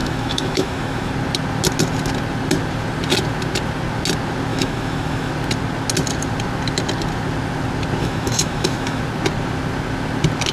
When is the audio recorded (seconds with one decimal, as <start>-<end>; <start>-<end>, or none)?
1.1-4.5; 5.3-8.0; 9.0-10.5